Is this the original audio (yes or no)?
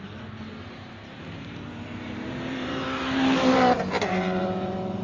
no